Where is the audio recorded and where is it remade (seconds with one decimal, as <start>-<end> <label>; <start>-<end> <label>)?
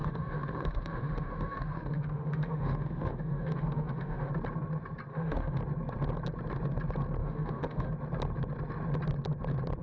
0.0-4.3 remade; 4.3-5.1 recorded; 5.1-5.6 remade; 5.6-7.2 recorded; 7.2-7.9 remade; 7.9-9.8 recorded